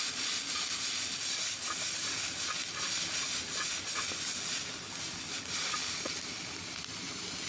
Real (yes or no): yes